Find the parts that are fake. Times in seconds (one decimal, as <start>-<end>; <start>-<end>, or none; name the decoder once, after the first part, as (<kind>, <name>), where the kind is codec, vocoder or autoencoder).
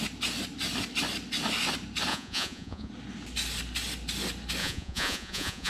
2.1-2.9 (vocoder, Vocos); 4.6-5.7